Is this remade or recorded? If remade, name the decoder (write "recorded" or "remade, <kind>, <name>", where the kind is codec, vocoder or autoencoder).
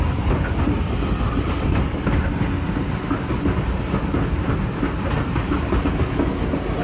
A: recorded